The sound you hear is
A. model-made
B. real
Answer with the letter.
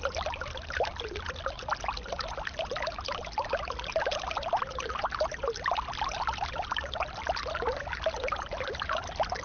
B